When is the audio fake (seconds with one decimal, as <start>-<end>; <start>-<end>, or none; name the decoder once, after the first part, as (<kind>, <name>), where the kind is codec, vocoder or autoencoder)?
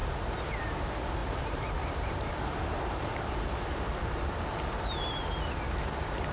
1.2-5.0 (vocoder, BigVGAN v2)